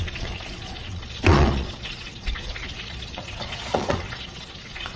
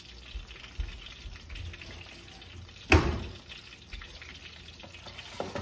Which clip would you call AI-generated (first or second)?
first